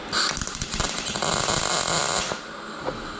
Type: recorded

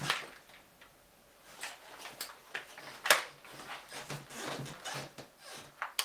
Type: recorded